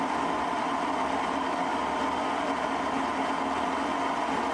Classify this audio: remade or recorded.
recorded